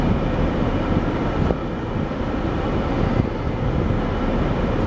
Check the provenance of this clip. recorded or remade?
recorded